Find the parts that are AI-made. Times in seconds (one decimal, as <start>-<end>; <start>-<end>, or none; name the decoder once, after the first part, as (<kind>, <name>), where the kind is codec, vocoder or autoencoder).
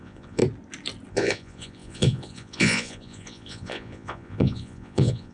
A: 0.0-0.4 (vocoder, Vocos); 1.1-5.3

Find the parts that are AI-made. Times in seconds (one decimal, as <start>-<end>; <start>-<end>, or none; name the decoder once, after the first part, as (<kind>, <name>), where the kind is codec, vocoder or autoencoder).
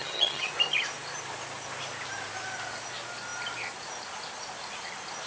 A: 0.0-0.5 (vocoder, HiFi-GAN)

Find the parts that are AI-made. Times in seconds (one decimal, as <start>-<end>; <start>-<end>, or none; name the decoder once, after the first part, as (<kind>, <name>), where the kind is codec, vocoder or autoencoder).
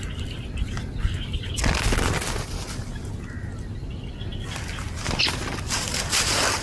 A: none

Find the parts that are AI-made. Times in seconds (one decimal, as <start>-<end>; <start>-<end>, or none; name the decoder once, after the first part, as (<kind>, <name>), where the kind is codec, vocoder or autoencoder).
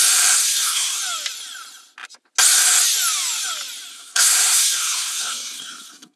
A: 0.4-1.0 (codec, SNAC); 3.9-6.2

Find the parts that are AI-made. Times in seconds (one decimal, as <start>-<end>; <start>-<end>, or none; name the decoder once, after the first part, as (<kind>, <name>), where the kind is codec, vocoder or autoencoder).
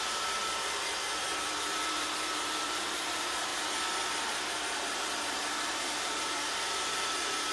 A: 0.0-3.5 (vocoder, BigVGAN v2); 4.5-7.5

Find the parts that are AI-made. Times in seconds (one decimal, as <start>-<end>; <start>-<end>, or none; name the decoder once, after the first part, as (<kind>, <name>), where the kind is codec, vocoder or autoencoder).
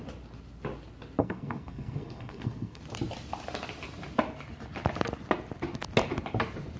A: 1.2-2.8 (codec, SNAC)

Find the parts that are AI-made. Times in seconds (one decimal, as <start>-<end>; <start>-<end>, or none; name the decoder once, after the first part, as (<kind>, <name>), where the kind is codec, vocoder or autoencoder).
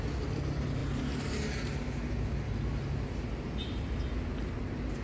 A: none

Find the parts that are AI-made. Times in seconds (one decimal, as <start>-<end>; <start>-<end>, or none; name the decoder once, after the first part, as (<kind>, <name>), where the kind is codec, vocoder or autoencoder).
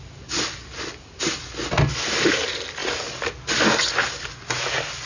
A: none